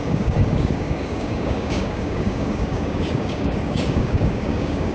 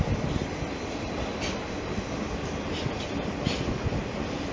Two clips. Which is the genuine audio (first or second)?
second